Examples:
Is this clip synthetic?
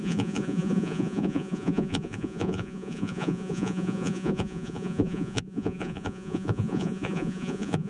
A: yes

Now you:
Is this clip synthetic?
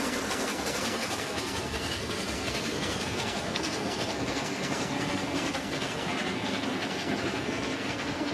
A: yes